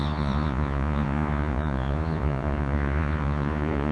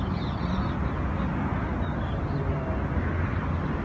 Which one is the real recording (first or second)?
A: second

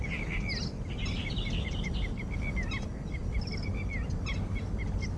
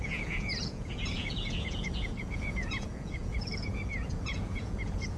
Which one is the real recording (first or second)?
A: first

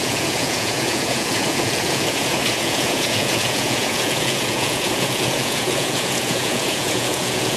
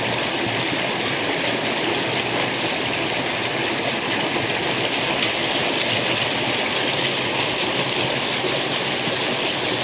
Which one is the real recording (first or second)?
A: second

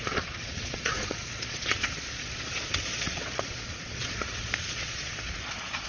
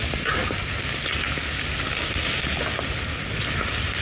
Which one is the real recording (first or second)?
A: second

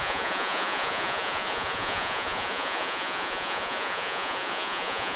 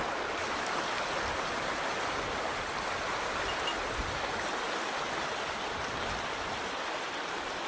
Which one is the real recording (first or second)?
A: second